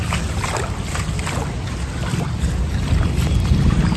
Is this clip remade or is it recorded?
recorded